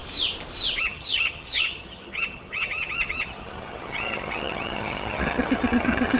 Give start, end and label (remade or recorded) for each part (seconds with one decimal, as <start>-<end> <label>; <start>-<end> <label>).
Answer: 0.0-0.8 recorded; 0.8-6.2 remade